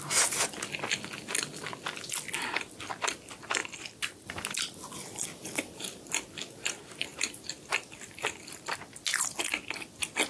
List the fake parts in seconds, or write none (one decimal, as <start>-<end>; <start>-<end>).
3.6-4.3; 7.1-8.5